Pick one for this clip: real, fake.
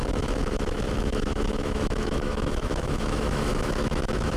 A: fake